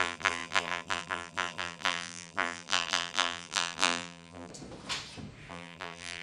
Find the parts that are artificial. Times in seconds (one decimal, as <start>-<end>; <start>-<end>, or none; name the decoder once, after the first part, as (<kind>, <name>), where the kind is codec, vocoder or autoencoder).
0.0-4.5 (vocoder, BigVGAN v2); 5.5-6.2